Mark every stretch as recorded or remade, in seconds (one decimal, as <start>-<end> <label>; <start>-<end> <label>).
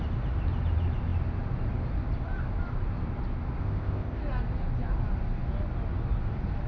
0.0-3.6 recorded; 3.6-4.2 remade; 4.2-6.7 recorded